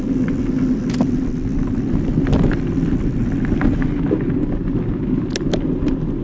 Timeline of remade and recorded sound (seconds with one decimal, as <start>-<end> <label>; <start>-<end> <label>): 0.0-6.2 recorded